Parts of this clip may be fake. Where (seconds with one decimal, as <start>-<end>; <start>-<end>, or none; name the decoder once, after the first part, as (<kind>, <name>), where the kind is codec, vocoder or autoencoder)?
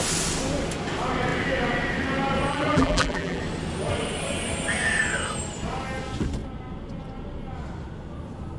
2.5-3.4 (vocoder, BigVGAN v2)